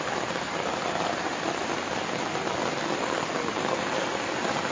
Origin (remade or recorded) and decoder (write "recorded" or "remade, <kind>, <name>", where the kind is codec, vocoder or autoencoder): recorded